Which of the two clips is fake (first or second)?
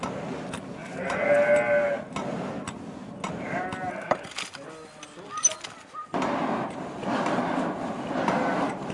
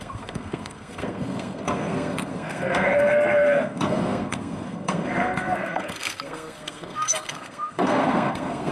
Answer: second